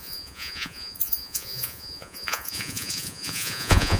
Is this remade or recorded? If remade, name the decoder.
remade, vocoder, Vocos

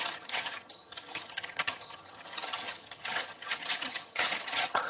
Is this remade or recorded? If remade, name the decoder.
remade, vocoder, HiFi-GAN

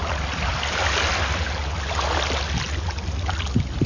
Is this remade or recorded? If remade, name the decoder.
recorded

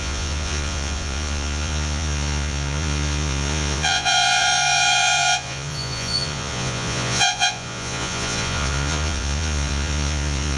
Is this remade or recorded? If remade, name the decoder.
remade, vocoder, Vocos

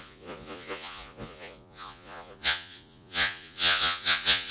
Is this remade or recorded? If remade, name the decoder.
remade, vocoder, Vocos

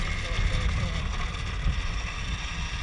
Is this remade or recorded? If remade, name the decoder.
recorded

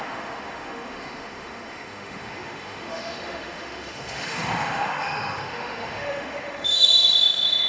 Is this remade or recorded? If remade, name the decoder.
remade, autoencoder, DAC-VAE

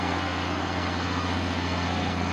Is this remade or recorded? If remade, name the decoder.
remade, codec, SNAC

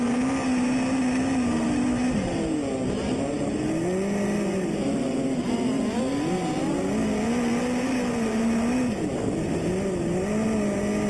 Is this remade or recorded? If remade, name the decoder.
recorded